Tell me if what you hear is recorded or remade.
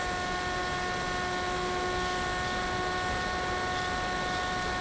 recorded